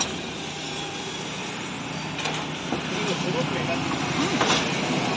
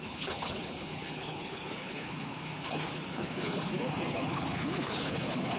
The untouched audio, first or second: first